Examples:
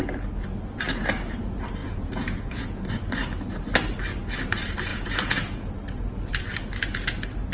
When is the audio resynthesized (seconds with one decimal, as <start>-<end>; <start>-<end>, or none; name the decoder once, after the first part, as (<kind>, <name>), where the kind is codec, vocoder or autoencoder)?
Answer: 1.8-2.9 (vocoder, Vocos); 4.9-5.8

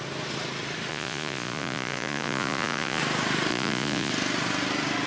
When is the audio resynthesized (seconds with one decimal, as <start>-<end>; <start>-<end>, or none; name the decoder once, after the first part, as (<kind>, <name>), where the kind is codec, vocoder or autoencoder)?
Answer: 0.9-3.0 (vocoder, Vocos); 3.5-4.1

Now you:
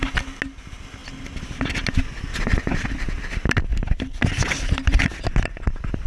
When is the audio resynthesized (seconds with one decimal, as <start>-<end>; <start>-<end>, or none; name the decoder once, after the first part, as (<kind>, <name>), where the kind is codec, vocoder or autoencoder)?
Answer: none

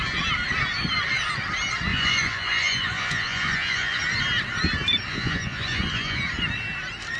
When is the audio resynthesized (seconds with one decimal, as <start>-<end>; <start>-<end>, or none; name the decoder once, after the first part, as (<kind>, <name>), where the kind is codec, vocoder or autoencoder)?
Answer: 1.9-4.0 (vocoder, Vocos); 5.1-6.2

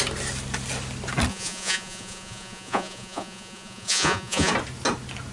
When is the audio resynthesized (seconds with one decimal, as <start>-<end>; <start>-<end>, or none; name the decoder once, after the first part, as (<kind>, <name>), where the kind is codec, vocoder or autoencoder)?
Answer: 1.3-4.5 (vocoder, Vocos)

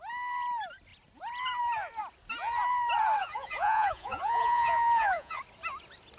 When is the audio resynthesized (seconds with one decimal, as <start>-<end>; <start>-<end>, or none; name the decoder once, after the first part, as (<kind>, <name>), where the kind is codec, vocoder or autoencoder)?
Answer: 3.2-5.4 (vocoder, Vocos)

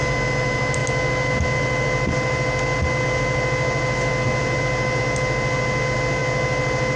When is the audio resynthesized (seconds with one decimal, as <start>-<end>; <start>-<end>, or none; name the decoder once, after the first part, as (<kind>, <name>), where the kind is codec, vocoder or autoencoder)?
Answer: none